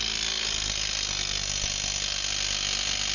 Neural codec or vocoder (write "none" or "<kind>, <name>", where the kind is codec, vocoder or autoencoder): none